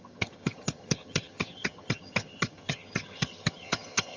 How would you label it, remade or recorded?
remade